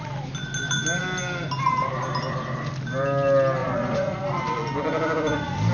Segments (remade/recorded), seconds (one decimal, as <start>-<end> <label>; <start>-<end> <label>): 0.0-3.6 recorded; 3.6-4.2 remade; 4.2-5.7 recorded